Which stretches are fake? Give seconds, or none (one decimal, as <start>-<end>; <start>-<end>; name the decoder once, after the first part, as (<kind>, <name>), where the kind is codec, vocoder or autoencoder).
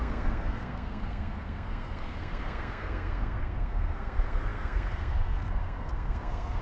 0.0-6.6 (codec, SNAC)